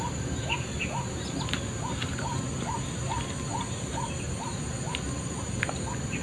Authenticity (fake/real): real